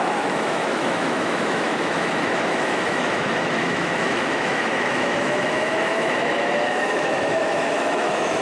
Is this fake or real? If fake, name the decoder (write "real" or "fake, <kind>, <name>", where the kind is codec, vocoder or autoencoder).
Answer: fake, autoencoder, DAC-VAE